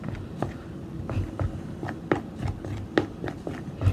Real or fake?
real